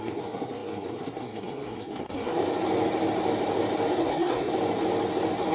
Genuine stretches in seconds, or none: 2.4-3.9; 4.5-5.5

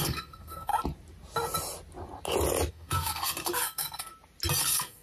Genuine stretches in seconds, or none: 0.7-2.7; 4.1-4.6

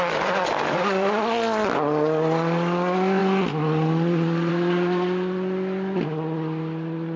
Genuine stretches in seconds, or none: 0.0-7.2

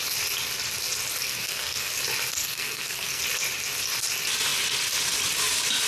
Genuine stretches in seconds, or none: 0.0-1.3; 1.9-2.3; 3.2-5.9

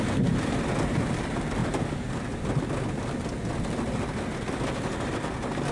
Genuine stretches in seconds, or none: 0.0-5.7

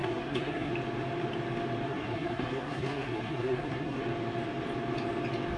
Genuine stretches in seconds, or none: 0.7-1.9; 4.0-5.6

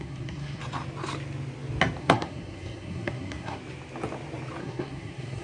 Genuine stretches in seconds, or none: 0.6-2.0; 3.6-4.6

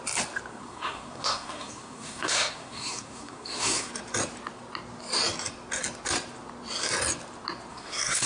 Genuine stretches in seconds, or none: 0.0-0.5; 3.9-7.7